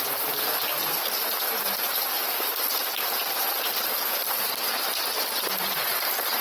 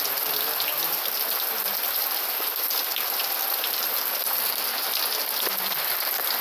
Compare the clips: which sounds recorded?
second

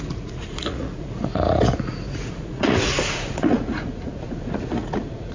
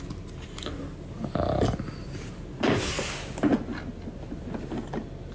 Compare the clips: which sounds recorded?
second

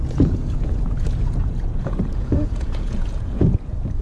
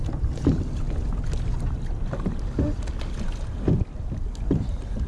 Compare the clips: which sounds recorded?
second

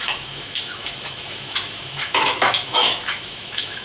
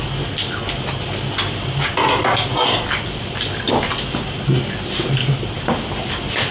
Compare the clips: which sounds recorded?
second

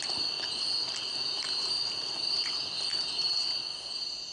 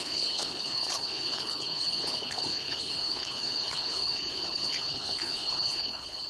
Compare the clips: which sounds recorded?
first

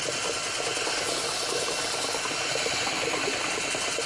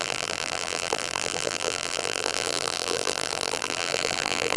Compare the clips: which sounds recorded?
first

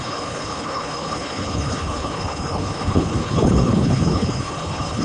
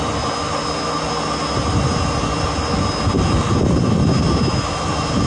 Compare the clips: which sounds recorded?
second